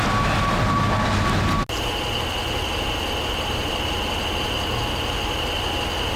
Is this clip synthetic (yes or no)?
no